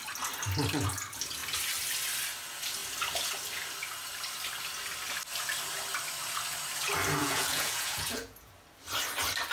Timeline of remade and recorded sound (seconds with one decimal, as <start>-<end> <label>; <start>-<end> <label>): 0.0-7.2 recorded; 7.2-8.5 remade; 8.5-9.5 recorded